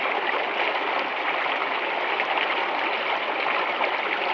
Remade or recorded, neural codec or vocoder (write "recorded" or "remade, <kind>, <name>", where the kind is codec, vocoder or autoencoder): recorded